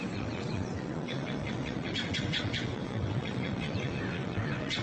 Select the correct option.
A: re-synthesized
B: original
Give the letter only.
A